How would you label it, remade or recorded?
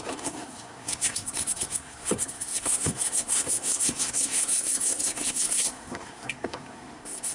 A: remade